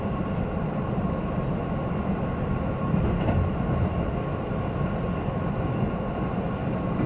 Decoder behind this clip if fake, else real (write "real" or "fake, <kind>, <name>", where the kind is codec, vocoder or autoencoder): real